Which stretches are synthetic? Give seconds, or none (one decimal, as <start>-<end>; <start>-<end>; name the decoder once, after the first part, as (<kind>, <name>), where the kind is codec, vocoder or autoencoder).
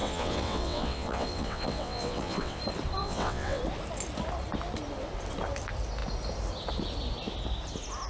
0.0-2.6 (vocoder, WaveNeXt); 3.0-3.6